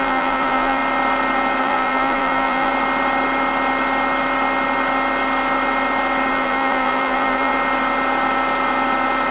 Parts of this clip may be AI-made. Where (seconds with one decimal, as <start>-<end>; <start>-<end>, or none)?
0.0-0.8; 1.6-2.7; 6.3-7.5